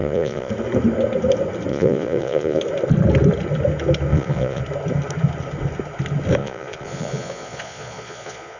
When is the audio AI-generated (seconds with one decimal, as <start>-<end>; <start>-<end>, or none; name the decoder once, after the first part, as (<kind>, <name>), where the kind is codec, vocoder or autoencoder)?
0.0-0.5 (vocoder, Vocos); 1.7-2.6; 4.1-4.6; 6.4-8.6